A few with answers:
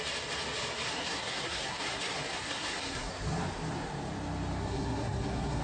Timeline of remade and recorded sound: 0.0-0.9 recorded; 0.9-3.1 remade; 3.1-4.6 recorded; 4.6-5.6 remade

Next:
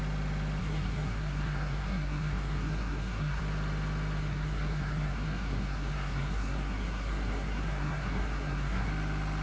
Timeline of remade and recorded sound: 0.0-0.6 recorded; 0.6-3.4 remade; 3.4-4.2 recorded; 4.2-8.9 remade; 8.9-9.4 recorded

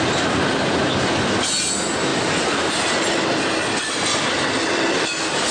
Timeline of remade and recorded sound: 0.0-5.5 recorded

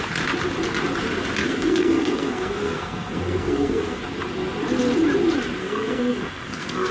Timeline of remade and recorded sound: 0.0-1.4 recorded; 1.4-4.0 remade; 4.0-5.6 recorded; 5.6-6.9 remade

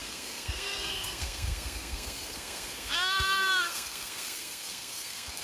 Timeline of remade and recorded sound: 0.0-5.4 remade

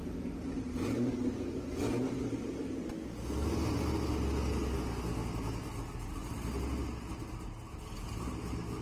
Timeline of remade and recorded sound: 0.0-8.8 recorded

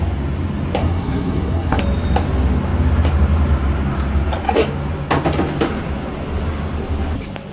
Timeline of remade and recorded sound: 0.0-0.8 recorded; 0.8-1.8 remade; 1.8-7.5 recorded